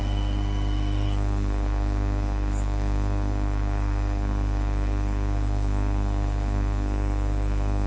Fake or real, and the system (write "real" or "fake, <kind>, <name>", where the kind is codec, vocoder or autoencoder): fake, codec, SNAC